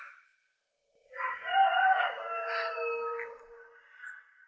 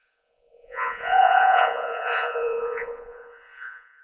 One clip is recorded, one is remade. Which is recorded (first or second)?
first